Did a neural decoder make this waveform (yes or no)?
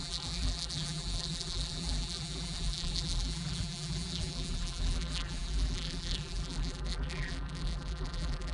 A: yes